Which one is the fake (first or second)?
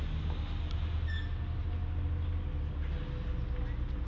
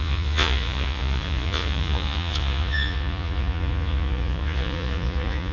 second